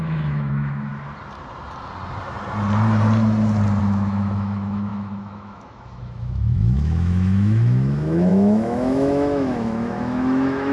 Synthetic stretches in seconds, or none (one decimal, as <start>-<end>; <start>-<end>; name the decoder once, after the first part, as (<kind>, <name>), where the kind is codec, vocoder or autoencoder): 0.0-0.9 (autoencoder, DAC-VAE); 3.8-10.7